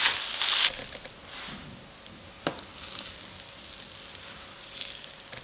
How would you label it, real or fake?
real